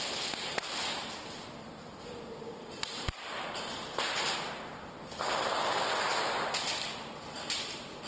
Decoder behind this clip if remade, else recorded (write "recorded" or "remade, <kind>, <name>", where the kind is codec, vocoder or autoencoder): recorded